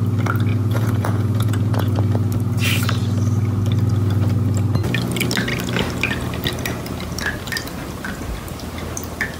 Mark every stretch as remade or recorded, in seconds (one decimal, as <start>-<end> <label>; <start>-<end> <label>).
0.0-0.5 recorded; 0.5-2.0 remade; 2.0-9.4 recorded